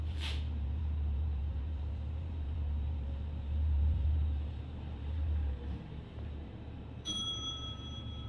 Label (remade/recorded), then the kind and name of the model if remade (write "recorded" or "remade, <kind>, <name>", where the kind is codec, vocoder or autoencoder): remade, vocoder, BigVGAN v2